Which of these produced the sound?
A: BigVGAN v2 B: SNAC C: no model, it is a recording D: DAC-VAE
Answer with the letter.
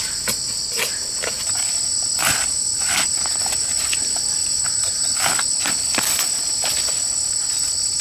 C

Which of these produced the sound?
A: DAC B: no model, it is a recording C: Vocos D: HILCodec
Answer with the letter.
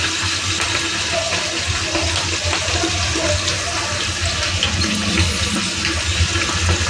B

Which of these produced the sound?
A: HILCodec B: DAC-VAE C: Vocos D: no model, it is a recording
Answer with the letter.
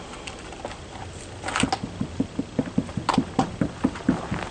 D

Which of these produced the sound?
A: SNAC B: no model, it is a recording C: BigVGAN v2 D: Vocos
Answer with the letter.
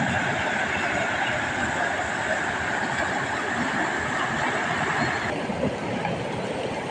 B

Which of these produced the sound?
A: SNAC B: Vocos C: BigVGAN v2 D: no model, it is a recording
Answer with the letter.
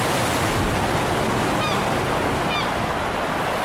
D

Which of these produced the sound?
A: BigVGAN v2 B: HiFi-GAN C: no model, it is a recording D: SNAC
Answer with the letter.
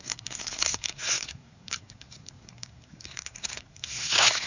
D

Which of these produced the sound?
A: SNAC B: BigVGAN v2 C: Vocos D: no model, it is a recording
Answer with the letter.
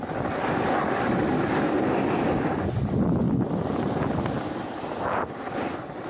D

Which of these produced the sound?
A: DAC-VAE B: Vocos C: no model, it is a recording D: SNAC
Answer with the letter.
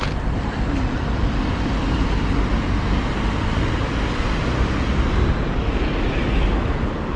C